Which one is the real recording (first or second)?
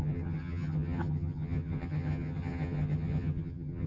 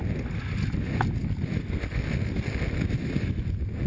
second